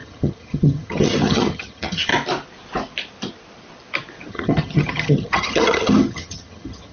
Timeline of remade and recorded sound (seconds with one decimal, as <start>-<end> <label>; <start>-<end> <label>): 0.0-2.1 remade; 2.1-4.3 recorded; 4.3-6.9 remade